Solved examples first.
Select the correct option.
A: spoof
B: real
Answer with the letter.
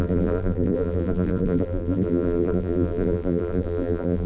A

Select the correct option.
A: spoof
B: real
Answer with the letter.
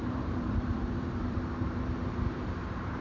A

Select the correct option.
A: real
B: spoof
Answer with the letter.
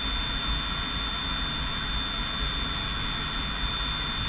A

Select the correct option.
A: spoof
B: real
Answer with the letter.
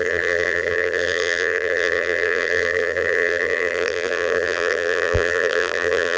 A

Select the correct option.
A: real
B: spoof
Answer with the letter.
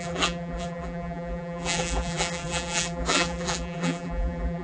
B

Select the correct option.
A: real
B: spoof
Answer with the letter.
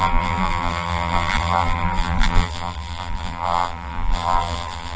B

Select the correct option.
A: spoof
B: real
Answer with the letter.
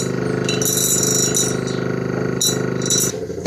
B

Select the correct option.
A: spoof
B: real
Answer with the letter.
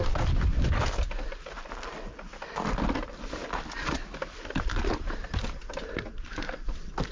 A